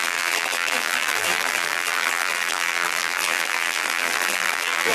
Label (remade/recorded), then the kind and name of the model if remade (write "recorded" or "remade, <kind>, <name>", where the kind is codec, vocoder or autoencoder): remade, vocoder, BigVGAN v2